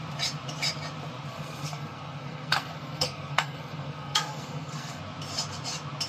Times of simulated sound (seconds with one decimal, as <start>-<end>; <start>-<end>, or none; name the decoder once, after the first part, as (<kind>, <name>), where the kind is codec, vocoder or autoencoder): 1.3-5.0 (codec, SNAC)